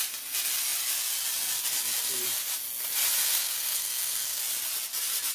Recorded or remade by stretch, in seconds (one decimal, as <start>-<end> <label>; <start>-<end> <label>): 0.0-3.2 recorded; 3.2-4.4 remade; 4.4-5.3 recorded